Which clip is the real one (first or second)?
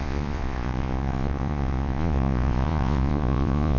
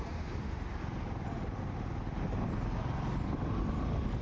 second